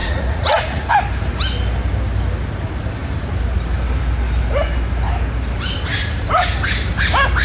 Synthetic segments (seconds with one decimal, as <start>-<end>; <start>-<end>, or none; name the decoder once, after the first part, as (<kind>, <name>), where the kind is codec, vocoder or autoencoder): 0.0-0.9 (vocoder, Vocos)